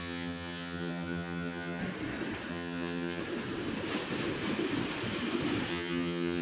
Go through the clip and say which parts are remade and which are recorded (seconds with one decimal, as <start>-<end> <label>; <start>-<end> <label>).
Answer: 0.0-1.8 remade; 1.8-2.5 recorded; 2.5-3.2 remade; 3.2-5.7 recorded; 5.7-6.4 remade

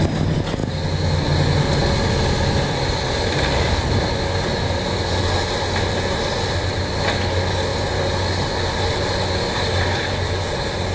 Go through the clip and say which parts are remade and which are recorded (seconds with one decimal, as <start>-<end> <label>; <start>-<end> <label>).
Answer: 0.0-10.9 recorded

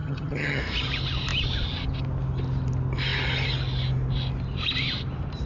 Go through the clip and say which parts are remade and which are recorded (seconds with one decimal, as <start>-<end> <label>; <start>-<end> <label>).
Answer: 0.0-0.6 remade; 0.6-5.5 recorded